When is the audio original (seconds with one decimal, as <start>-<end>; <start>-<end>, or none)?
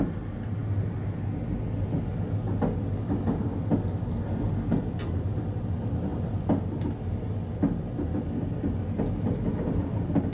0.0-10.3